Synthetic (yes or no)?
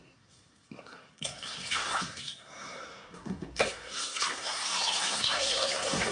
yes